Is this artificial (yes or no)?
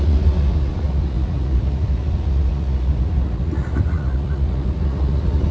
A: yes